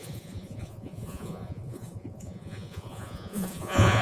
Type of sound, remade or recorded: remade